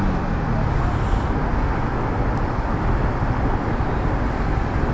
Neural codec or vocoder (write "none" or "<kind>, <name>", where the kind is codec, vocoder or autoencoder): none